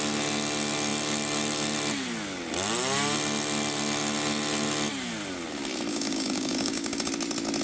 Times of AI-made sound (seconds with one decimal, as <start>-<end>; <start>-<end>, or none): 5.9-7.1

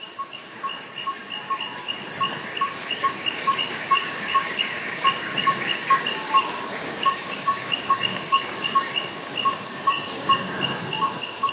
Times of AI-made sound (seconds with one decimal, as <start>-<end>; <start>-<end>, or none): 0.0-0.6; 2.4-11.5

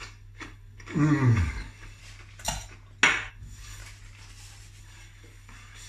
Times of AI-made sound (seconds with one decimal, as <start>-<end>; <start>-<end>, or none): 0.0-2.0; 3.3-3.8; 4.8-5.9